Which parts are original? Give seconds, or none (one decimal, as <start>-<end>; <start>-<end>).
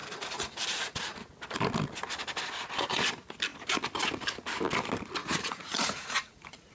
1.3-5.2